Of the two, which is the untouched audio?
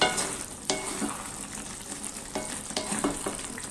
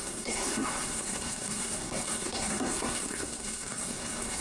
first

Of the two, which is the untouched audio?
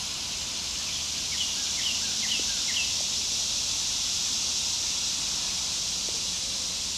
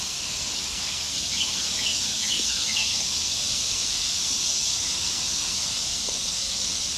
first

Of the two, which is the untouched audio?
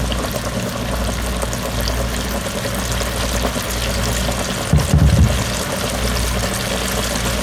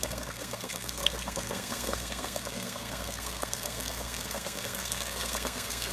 first